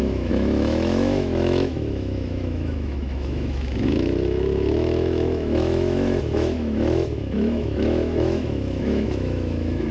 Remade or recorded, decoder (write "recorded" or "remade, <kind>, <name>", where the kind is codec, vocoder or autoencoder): remade, autoencoder, DAC-VAE